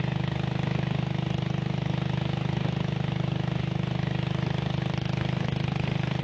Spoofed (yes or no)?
no